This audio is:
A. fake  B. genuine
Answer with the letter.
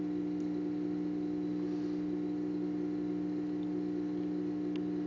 B